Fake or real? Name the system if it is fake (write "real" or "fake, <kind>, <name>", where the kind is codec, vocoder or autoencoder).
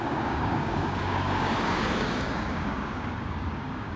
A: fake, codec, DAC